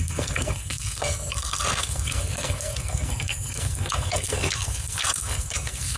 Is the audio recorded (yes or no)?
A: no